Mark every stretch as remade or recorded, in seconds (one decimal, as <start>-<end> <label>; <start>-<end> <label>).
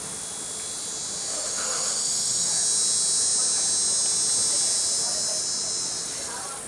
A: 0.0-1.3 recorded; 1.3-2.5 remade; 2.5-6.7 recorded